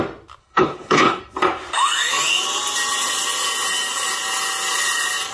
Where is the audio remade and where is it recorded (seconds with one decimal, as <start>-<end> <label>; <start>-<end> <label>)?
0.0-0.4 recorded; 0.4-1.2 remade; 1.2-5.3 recorded